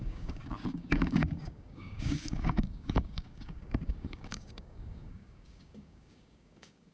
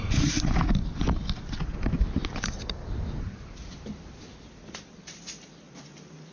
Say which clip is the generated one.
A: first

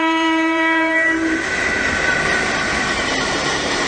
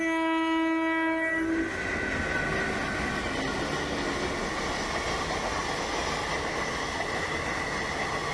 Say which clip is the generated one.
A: first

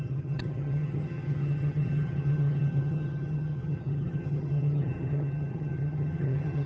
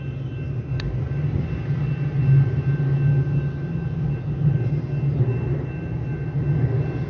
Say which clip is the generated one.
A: first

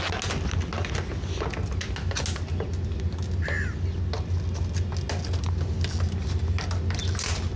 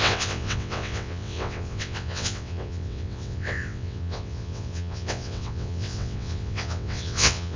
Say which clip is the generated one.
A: second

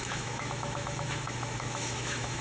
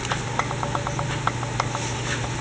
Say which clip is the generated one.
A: first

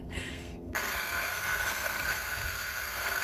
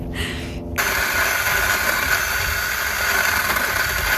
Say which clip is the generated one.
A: first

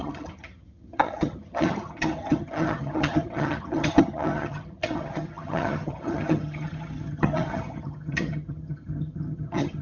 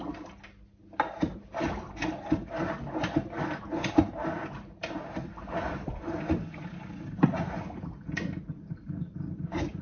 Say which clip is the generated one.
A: first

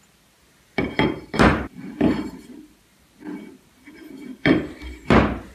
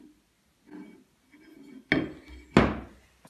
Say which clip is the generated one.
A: first